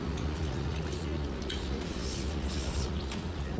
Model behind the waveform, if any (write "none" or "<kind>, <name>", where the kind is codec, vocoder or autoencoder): vocoder, Vocos